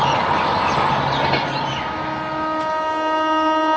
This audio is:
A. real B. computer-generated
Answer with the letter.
A